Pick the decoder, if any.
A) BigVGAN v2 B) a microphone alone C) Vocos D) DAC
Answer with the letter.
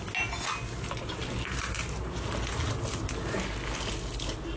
B